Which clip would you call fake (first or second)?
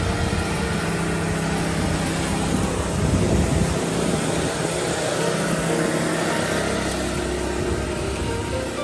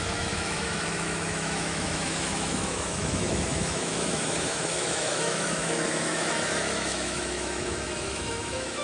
second